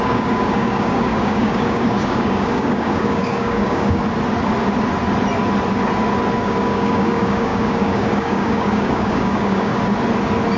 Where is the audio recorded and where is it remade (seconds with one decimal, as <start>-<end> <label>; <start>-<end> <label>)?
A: 0.0-4.0 remade; 4.0-6.4 recorded; 6.4-9.7 remade; 9.7-10.6 recorded